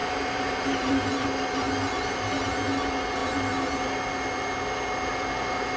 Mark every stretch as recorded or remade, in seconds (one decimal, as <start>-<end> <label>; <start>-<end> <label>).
0.0-0.9 remade; 0.9-5.8 recorded